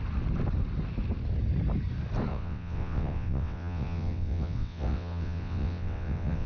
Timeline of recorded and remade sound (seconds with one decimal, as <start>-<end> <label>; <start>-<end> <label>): 0.0-2.3 recorded; 2.3-6.5 remade